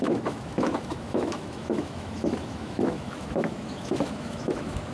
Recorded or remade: remade